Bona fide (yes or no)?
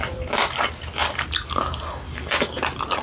yes